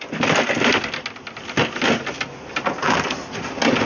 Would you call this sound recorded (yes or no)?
yes